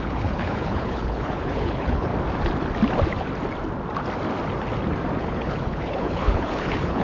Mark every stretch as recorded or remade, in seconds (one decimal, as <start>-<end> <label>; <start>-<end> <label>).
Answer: 0.0-2.1 remade; 2.1-5.2 recorded; 5.2-7.0 remade